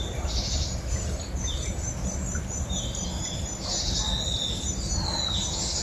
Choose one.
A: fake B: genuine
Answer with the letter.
B